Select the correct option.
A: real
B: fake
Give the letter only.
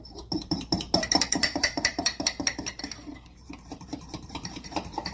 B